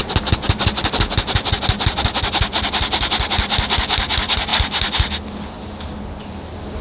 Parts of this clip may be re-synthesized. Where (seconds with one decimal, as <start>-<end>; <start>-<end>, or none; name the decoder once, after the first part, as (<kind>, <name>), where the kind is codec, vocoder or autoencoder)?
none